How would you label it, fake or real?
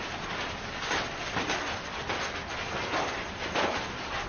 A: real